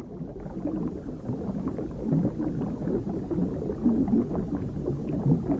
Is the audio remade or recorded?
recorded